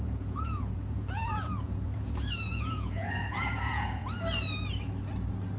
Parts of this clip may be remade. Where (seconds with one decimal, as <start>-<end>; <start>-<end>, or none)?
0.0-4.0